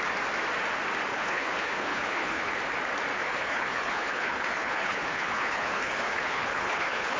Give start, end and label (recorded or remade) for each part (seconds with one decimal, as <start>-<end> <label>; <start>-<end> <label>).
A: 0.0-1.1 recorded; 1.1-2.5 remade; 2.5-3.3 recorded; 3.3-7.2 remade